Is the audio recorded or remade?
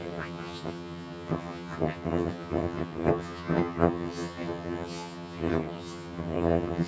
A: remade